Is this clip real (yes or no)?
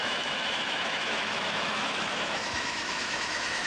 no